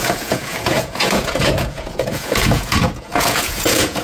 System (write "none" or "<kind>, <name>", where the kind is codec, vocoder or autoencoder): vocoder, Vocos